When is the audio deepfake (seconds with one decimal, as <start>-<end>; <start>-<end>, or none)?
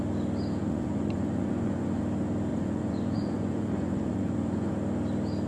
0.6-2.0; 2.5-4.7